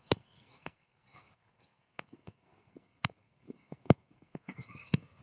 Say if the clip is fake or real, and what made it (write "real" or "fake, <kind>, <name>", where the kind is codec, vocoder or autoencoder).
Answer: fake, codec, SNAC